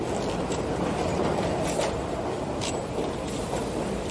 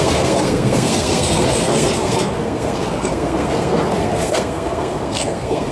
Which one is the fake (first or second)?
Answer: second